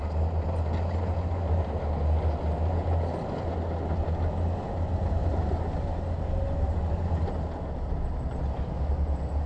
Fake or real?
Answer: real